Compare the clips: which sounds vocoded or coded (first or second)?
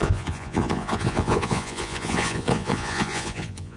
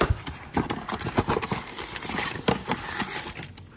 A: first